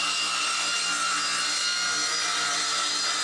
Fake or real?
real